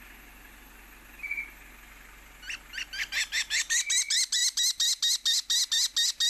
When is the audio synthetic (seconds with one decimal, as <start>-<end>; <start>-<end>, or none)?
none